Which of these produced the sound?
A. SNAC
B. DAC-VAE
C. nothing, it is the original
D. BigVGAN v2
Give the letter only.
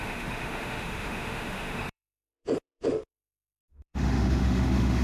B